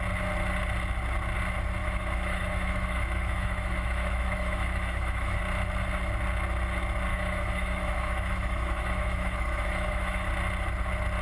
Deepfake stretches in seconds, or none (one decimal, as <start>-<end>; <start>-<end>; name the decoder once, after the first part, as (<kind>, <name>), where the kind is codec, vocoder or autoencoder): 1.8-5.4 (autoencoder, DAC-VAE); 7.1-10.3